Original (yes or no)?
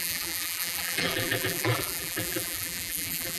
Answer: no